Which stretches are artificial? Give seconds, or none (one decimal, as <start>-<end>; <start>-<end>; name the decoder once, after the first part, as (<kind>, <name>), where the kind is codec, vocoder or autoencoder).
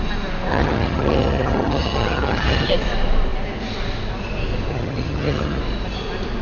0.5-2.7 (vocoder, HiFi-GAN); 4.7-5.6